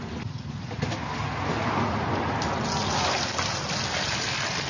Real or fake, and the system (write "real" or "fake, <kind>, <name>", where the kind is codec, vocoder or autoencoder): real